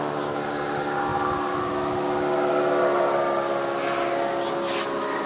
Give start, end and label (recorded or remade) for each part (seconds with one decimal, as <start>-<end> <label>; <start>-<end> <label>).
0.0-5.3 recorded